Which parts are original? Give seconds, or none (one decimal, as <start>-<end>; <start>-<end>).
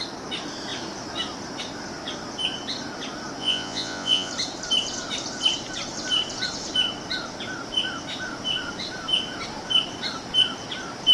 0.0-3.4; 4.3-11.1